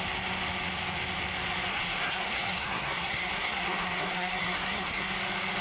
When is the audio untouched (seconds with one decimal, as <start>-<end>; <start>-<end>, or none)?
0.0-1.7; 5.1-5.6